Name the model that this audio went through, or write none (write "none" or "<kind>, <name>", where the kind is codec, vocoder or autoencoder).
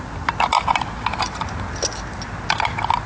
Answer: none